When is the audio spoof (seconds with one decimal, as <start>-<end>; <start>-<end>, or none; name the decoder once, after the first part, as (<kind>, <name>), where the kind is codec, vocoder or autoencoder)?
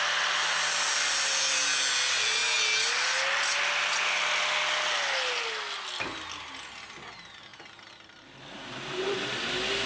none